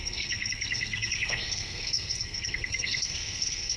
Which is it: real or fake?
fake